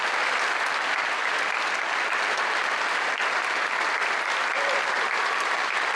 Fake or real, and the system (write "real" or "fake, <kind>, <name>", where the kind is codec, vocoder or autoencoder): fake, vocoder, BigVGAN v2